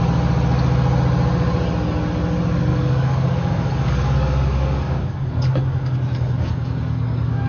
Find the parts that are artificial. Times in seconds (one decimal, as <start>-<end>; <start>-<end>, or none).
2.7-7.5